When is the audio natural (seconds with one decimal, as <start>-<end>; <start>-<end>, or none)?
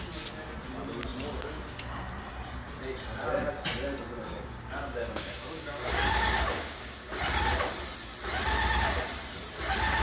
0.0-4.2; 7.2-10.0